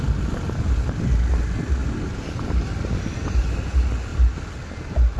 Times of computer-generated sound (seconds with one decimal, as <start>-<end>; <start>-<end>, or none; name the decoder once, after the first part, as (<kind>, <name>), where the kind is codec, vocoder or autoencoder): none